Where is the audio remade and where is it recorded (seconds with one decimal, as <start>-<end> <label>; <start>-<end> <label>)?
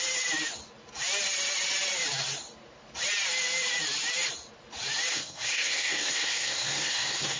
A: 0.0-5.1 recorded; 5.1-7.4 remade